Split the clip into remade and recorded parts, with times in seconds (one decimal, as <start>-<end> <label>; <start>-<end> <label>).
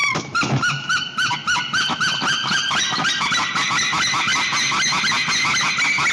0.0-3.7 remade; 3.7-6.1 recorded